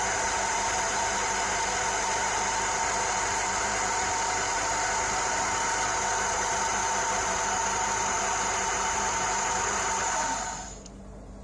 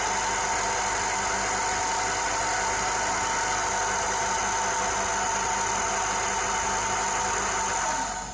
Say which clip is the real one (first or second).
second